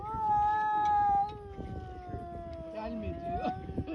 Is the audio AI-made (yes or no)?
no